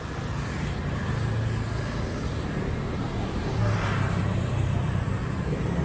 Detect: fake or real real